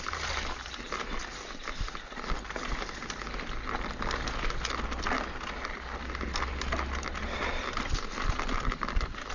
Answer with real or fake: real